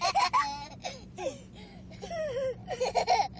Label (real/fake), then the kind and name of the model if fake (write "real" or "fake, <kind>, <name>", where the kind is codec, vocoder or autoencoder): real